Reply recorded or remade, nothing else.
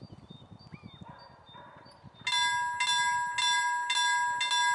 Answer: recorded